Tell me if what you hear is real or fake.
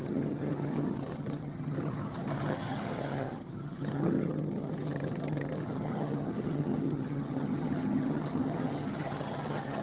fake